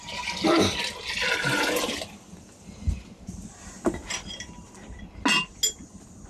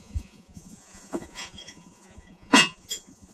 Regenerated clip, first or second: second